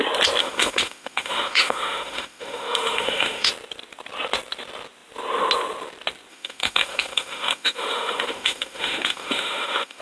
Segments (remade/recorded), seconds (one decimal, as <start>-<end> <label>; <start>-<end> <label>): 0.0-0.4 recorded; 0.4-3.5 remade; 3.5-6.3 recorded; 6.3-10.0 remade